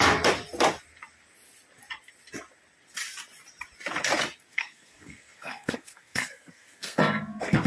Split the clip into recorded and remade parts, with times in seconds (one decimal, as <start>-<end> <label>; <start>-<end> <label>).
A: 0.0-4.5 recorded; 4.5-7.7 remade

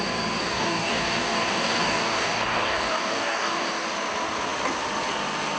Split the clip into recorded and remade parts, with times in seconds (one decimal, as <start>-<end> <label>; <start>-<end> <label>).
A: 0.0-0.4 recorded; 0.4-3.7 remade; 3.7-5.6 recorded

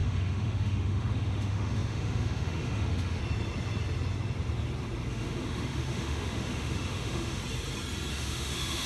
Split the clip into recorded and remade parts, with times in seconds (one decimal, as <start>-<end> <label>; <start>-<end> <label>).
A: 0.0-3.2 remade; 3.2-5.1 recorded; 5.1-7.4 remade; 7.4-8.1 recorded; 8.1-8.9 remade

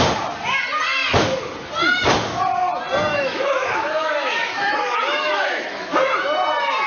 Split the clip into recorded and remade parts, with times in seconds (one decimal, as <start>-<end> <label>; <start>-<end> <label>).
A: 0.0-3.1 recorded; 3.1-5.9 remade; 5.9-6.9 recorded

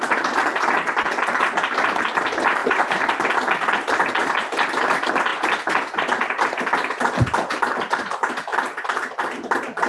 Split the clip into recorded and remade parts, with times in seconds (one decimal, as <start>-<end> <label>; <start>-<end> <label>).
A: 0.0-2.6 recorded; 2.6-3.1 remade; 3.1-9.9 recorded

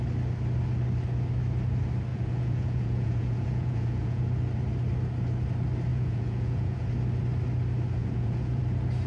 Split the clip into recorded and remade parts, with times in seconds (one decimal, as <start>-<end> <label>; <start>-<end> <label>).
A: 0.0-2.1 recorded; 2.1-4.2 remade; 4.2-5.9 recorded; 5.9-6.9 remade; 6.9-8.0 recorded; 8.0-8.6 remade; 8.6-9.1 recorded

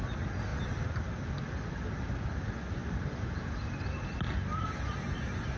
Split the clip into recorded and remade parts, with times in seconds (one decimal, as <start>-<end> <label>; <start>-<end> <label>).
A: 0.0-5.6 recorded

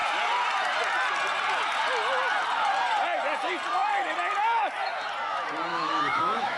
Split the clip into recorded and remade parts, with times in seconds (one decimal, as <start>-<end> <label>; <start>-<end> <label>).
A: 0.0-5.7 recorded; 5.7-6.6 remade